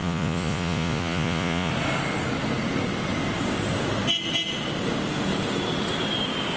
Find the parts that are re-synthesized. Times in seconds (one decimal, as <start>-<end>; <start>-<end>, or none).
0.0-1.7